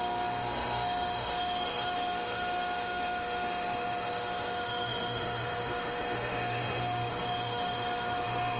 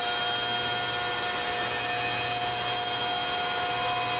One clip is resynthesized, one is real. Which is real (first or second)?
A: second